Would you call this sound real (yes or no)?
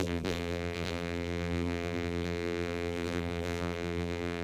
no